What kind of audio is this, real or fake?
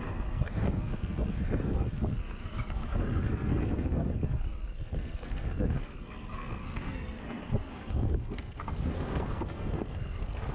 fake